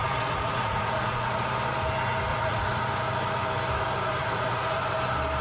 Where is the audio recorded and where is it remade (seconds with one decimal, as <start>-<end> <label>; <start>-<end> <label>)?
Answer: 0.0-1.4 remade; 1.4-2.3 recorded; 2.3-2.9 remade; 2.9-4.2 recorded; 4.2-4.8 remade; 4.8-5.4 recorded